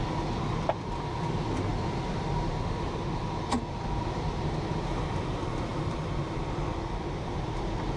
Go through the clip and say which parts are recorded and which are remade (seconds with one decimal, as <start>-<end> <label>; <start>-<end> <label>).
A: 0.0-5.7 recorded; 5.7-8.0 remade